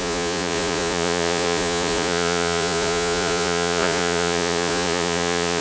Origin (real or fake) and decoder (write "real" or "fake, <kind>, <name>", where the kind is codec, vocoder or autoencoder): fake, vocoder, Vocos